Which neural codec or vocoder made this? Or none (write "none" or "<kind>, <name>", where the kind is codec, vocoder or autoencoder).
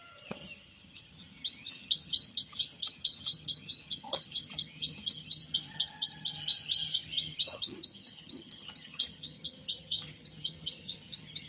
vocoder, HiFi-GAN